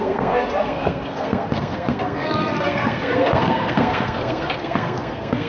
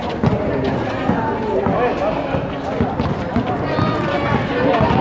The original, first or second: second